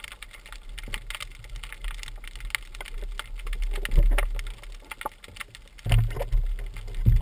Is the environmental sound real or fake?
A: real